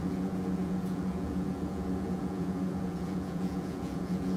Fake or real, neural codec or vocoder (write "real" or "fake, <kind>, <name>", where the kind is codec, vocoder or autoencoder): fake, vocoder, Vocos